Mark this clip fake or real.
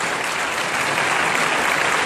real